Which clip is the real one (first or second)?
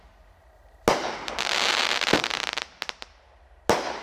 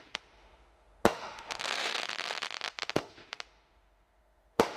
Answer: first